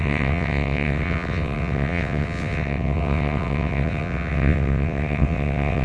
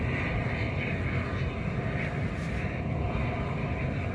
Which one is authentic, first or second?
second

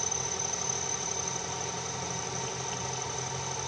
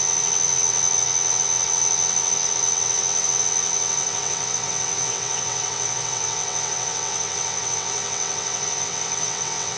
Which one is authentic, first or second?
first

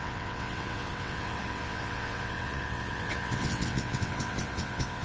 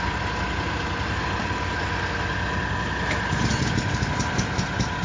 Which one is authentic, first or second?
second